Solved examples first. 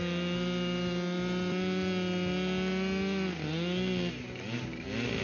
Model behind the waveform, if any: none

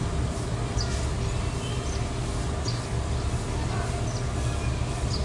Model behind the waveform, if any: none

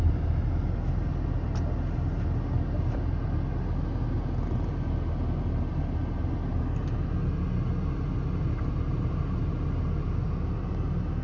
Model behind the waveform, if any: none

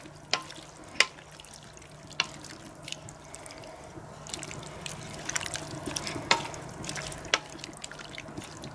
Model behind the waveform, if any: none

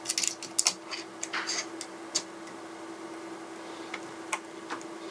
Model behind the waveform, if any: none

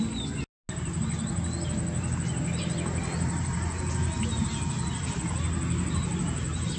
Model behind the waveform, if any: none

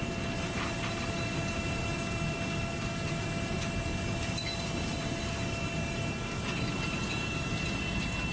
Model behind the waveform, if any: none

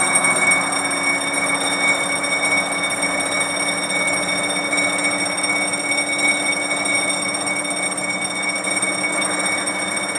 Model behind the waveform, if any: none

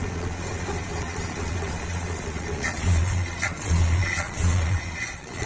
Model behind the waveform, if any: vocoder, Vocos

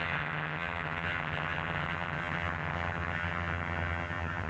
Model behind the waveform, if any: vocoder, HiFi-GAN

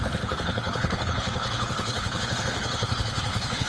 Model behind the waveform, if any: codec, HILCodec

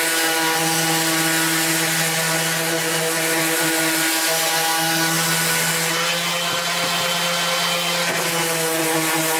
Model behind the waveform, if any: none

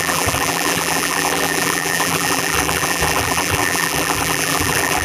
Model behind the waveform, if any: vocoder, BigVGAN v2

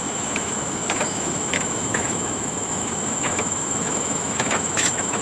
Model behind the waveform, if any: autoencoder, DAC-VAE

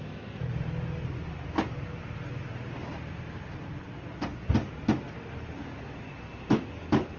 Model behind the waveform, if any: none